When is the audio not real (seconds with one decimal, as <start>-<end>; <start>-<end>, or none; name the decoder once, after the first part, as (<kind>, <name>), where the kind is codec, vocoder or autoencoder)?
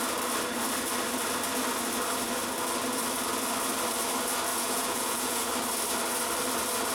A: 4.5-5.5 (vocoder, Vocos)